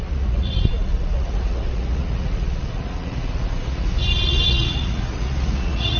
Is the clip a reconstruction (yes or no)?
yes